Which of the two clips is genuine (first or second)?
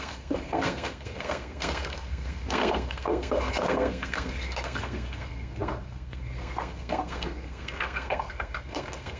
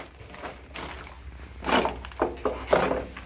second